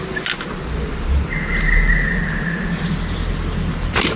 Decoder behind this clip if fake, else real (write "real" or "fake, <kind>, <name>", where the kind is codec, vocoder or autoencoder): real